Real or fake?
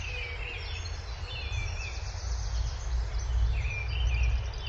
real